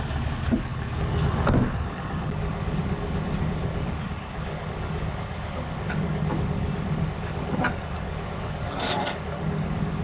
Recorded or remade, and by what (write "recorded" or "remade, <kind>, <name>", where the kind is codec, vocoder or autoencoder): remade, codec, DAC